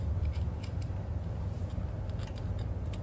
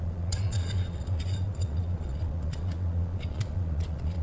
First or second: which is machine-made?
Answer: second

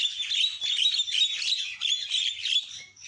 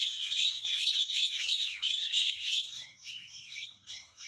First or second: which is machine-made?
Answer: second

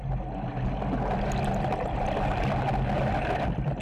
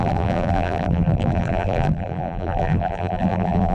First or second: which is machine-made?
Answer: second